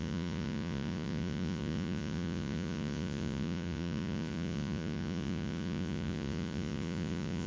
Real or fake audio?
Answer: fake